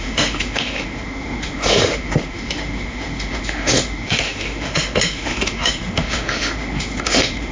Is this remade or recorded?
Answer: remade